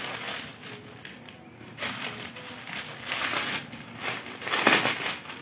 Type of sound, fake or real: real